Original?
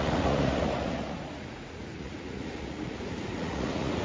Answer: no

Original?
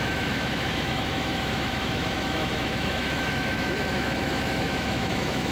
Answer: no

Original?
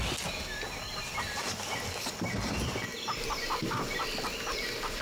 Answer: yes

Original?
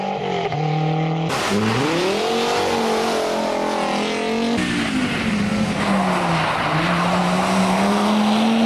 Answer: yes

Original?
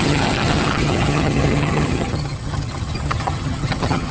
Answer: no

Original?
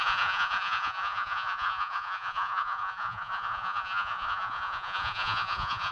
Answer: no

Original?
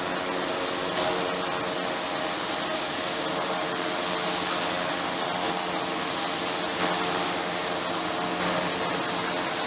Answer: yes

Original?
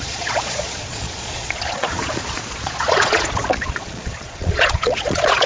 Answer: no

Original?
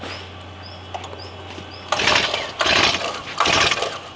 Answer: yes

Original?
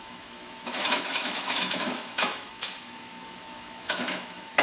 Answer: no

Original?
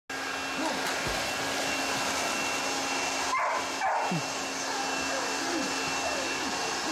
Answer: yes